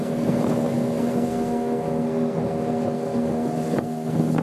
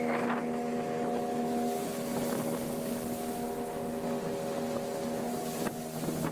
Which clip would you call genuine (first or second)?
second